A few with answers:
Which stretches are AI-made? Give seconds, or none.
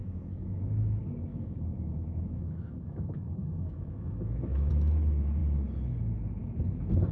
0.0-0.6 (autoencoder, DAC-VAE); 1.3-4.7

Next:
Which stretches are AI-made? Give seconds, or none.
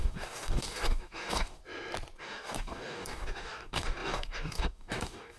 0.0-1.6 (codec, DAC); 2.2-5.4